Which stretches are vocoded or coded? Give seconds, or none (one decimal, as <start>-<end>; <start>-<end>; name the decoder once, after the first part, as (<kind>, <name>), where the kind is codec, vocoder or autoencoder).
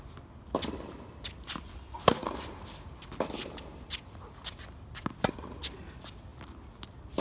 none